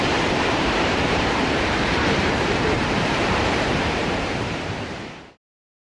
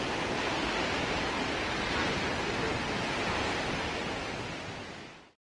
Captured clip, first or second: second